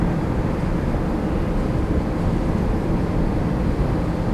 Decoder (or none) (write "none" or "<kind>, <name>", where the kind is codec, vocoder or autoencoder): vocoder, BigVGAN v2